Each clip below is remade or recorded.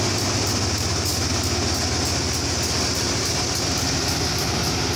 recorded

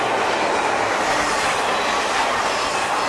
recorded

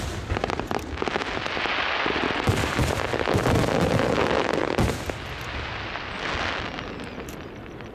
recorded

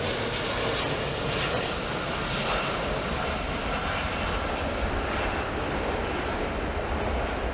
recorded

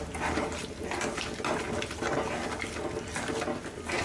recorded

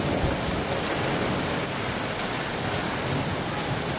recorded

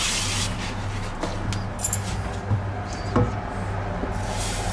recorded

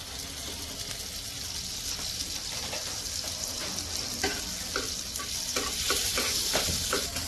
recorded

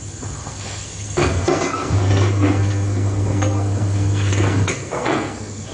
remade